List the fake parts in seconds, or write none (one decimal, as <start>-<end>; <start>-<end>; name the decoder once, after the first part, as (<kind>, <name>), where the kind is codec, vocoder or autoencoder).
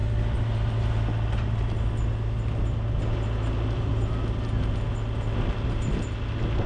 none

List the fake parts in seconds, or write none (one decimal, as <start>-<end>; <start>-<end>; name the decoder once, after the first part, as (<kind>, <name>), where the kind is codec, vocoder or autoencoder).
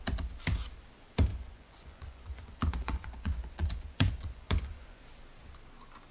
1.3-5.0 (vocoder, Vocos)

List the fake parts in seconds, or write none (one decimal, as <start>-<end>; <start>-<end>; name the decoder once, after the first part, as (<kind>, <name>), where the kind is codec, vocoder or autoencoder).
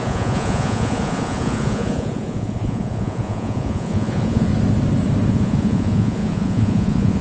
0.0-4.5 (vocoder, Vocos); 5.3-7.2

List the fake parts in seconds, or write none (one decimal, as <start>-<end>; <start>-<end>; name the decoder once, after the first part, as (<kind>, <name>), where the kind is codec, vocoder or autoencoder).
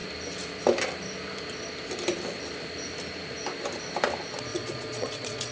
4.5-5.5 (vocoder, Vocos)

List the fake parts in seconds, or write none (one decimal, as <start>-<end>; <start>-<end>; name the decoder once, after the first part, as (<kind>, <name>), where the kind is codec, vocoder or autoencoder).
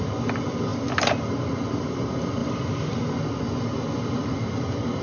none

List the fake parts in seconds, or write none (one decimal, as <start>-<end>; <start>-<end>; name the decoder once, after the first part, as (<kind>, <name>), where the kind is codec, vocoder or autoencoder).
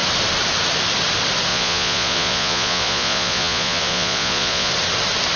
1.5-4.7 (vocoder, Vocos)